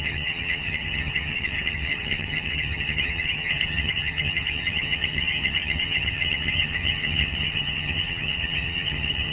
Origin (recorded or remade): remade